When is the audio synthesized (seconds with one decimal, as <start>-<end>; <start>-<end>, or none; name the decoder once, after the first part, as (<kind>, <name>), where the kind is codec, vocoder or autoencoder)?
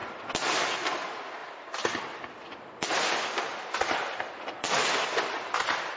none